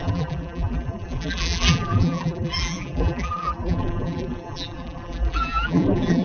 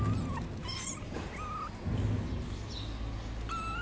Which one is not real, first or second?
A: first